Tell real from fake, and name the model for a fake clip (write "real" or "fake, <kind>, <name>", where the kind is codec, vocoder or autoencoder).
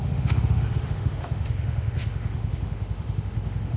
fake, autoencoder, DAC-VAE